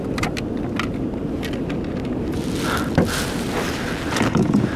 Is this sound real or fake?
real